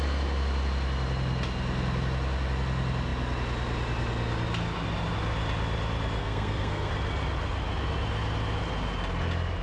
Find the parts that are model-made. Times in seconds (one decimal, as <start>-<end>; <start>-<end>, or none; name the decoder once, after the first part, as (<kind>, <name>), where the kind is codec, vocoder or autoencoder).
6.2-6.9 (codec, SNAC)